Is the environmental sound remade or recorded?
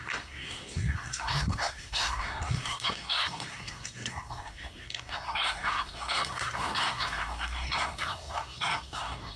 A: remade